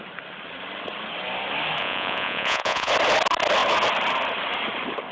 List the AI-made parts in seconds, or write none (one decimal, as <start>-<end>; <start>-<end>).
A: 1.8-2.9